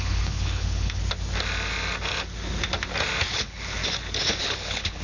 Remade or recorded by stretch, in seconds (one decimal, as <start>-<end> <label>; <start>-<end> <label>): 0.0-1.0 remade; 1.0-3.3 recorded; 3.3-3.8 remade; 3.8-4.4 recorded; 4.4-5.0 remade